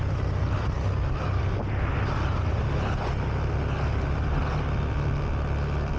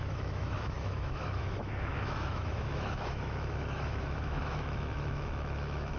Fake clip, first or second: second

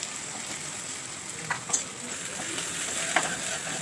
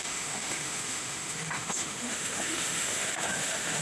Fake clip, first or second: second